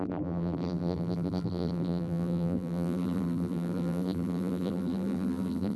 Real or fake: fake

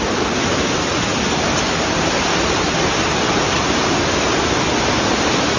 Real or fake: real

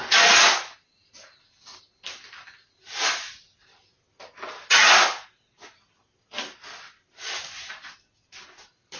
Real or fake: real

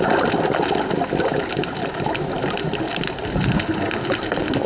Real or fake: real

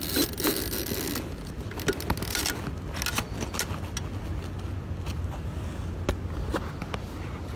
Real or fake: real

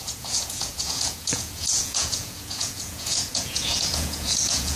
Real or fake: fake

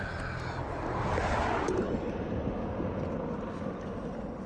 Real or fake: real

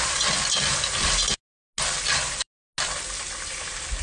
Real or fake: real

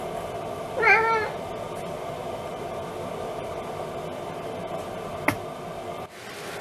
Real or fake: real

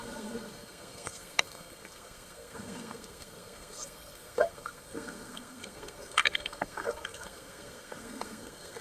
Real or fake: fake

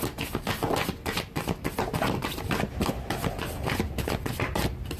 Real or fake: fake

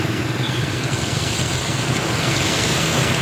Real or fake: fake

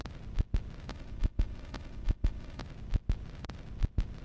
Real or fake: real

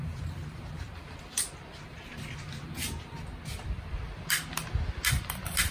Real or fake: real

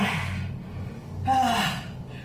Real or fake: real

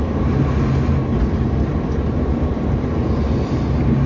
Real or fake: real